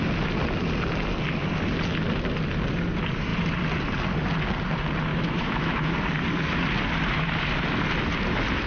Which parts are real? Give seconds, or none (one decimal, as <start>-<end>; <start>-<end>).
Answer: 0.0-5.1; 5.9-8.7